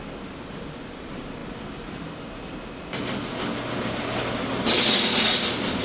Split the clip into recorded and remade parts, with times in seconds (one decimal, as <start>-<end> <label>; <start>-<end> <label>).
0.0-5.8 recorded